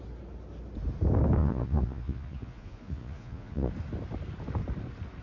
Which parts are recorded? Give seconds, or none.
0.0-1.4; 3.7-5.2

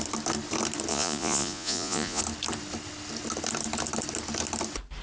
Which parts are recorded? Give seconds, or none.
0.0-0.9; 2.2-5.0

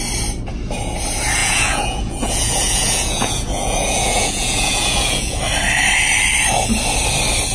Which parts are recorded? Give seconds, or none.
0.0-1.4; 5.4-7.5

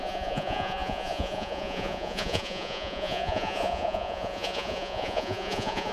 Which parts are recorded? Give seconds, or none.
none

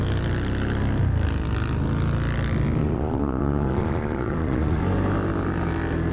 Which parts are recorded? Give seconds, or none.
0.0-2.8; 4.8-6.1

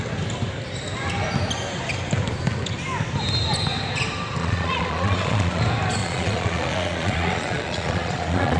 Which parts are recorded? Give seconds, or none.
0.0-4.4; 5.6-6.0

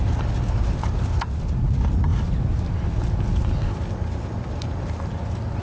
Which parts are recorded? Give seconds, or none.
0.0-5.6